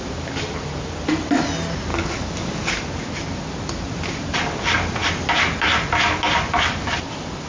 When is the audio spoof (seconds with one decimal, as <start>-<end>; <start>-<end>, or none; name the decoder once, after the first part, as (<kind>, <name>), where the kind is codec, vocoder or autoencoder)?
1.9-2.7 (codec, DAC)